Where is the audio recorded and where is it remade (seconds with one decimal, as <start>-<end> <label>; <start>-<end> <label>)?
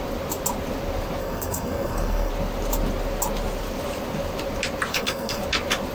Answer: 0.0-1.2 recorded; 1.2-2.3 remade; 2.3-4.9 recorded; 4.9-5.4 remade; 5.4-5.9 recorded